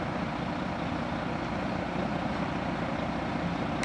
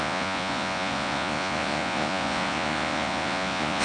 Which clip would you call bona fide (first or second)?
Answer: first